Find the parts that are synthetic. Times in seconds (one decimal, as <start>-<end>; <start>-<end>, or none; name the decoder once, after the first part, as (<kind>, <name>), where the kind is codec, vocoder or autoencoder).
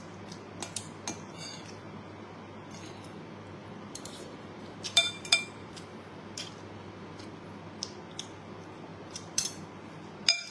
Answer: 3.6-7.2 (vocoder, BigVGAN v2); 8.9-9.6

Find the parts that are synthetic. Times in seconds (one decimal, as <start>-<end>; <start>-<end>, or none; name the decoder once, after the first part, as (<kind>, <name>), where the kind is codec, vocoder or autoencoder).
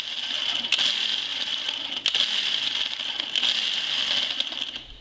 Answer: 1.3-2.6 (vocoder, BigVGAN v2)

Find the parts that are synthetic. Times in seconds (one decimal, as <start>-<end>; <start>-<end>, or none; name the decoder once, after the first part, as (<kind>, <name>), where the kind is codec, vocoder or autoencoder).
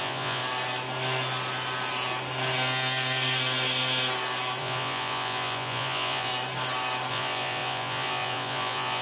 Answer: 0.0-0.4 (vocoder, Vocos); 4.6-6.3; 7.1-9.0